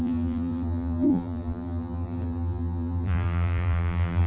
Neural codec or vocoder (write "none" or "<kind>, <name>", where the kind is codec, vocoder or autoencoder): vocoder, BigVGAN v2